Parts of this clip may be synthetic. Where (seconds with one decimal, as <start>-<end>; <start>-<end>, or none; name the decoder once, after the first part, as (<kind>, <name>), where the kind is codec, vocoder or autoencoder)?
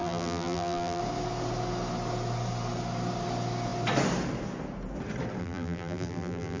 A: 0.0-1.0 (vocoder, BigVGAN v2); 5.4-6.6